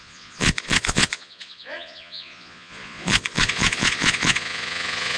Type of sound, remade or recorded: remade